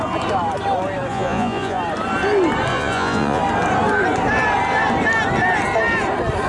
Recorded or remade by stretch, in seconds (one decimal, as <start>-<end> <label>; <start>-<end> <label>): 0.0-1.1 recorded; 1.1-1.8 remade; 1.8-2.7 recorded; 2.7-3.4 remade; 3.4-6.5 recorded